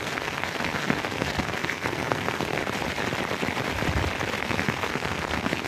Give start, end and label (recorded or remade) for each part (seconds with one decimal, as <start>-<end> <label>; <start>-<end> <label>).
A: 0.0-2.6 remade; 2.6-4.4 recorded; 4.4-5.7 remade